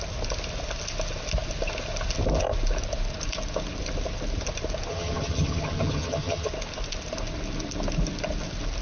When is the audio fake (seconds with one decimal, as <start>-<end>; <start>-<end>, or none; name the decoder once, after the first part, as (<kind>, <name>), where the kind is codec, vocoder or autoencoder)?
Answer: 4.9-6.5 (vocoder, HiFi-GAN)